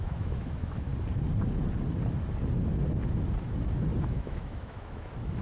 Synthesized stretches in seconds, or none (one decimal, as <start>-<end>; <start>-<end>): 0.0-0.9; 4.0-5.4